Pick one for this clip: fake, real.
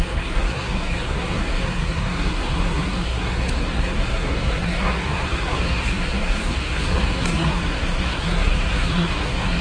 fake